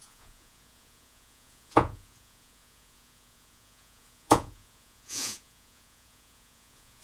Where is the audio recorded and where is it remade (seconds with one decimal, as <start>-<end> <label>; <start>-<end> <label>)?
0.0-7.0 remade